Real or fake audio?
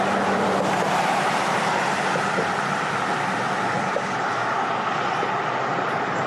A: real